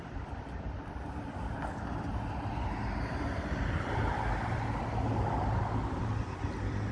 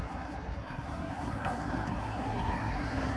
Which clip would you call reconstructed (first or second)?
second